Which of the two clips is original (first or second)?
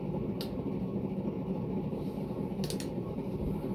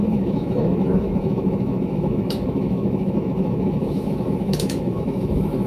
first